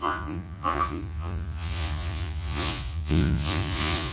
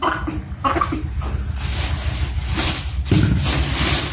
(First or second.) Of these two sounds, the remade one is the first